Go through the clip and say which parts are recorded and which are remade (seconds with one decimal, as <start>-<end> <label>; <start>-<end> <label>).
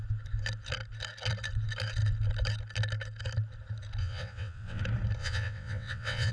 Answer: 0.0-4.0 recorded; 4.0-4.8 remade; 4.8-5.2 recorded; 5.2-6.3 remade